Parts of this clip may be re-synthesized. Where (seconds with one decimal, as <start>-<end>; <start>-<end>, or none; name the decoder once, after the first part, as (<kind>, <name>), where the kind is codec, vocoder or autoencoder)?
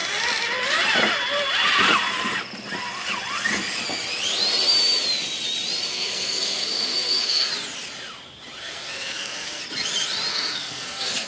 5.9-7.5 (codec, SNAC); 8.6-9.6; 10.3-11.3